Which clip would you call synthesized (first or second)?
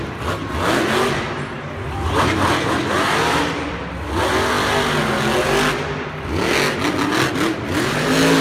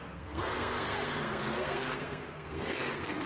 second